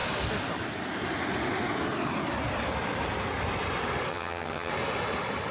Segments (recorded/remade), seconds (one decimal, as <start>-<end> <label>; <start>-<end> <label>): 0.0-4.1 recorded; 4.1-4.7 remade; 4.7-5.5 recorded